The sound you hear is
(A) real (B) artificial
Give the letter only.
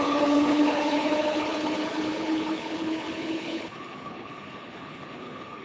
B